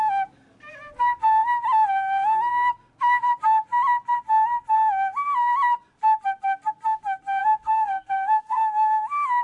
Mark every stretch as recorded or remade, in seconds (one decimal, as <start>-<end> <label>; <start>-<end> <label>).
0.0-7.4 recorded; 7.4-8.6 remade; 8.6-9.4 recorded